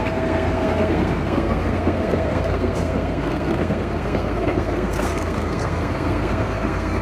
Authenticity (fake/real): fake